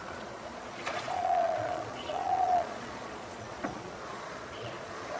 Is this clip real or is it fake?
fake